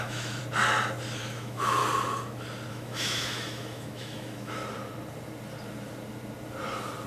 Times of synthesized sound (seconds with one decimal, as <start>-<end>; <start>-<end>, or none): 0.0-0.4; 1.2-1.8; 2.7-4.6